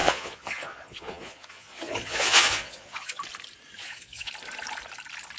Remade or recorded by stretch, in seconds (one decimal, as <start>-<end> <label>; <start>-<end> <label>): 0.0-3.2 remade; 3.2-3.8 recorded; 3.8-4.3 remade; 4.3-5.4 recorded